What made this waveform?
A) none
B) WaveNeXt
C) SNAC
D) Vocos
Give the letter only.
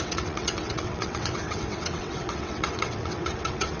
B